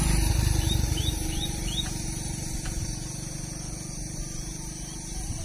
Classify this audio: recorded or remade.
remade